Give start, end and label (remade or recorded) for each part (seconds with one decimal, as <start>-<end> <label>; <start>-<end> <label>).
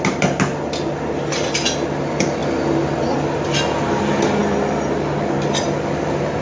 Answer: 0.0-6.4 recorded